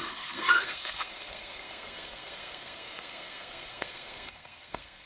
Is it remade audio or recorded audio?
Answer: remade